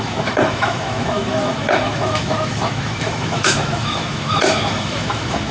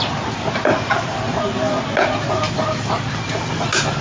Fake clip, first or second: first